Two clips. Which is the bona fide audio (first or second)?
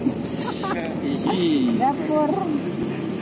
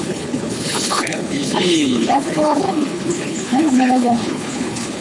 first